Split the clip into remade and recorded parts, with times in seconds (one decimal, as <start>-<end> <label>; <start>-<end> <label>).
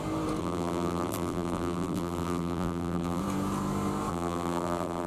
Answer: 0.0-0.4 recorded; 0.4-3.2 remade; 3.2-4.1 recorded; 4.1-5.1 remade